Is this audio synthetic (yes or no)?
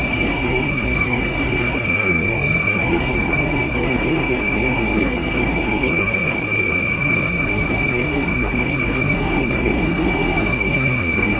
yes